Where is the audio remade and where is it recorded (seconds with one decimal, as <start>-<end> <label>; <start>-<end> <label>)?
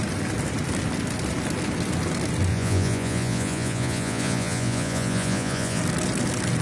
0.0-2.5 recorded; 2.5-5.8 remade; 5.8-6.6 recorded